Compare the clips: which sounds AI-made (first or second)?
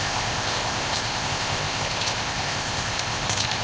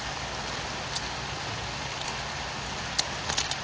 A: first